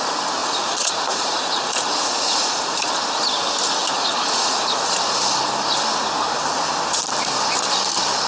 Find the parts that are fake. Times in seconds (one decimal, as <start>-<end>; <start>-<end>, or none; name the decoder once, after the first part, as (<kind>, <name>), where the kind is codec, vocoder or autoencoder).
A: 0.4-2.9 (vocoder, Vocos); 3.8-5.0